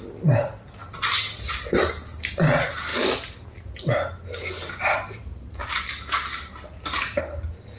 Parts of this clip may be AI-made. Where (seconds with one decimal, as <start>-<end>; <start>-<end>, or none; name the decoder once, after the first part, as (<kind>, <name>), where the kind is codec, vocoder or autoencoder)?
none